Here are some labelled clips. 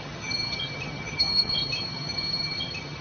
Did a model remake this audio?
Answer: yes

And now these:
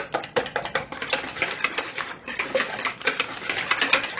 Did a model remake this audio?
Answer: no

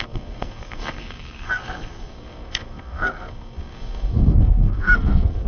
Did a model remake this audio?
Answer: yes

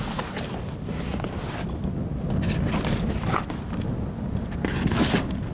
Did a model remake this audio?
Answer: no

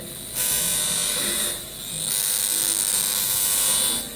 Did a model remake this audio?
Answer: no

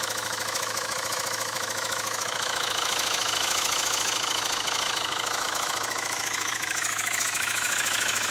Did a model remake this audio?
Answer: yes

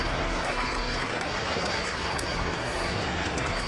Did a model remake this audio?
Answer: yes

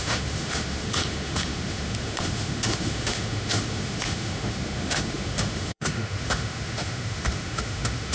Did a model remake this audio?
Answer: yes